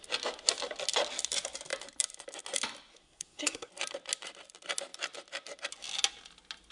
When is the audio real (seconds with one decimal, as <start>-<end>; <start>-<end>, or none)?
0.0-2.9; 3.7-6.7